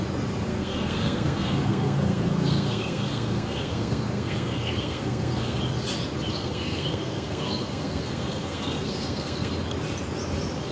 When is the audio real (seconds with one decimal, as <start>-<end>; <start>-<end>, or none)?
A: 0.0-0.5; 5.6-6.3; 9.5-10.7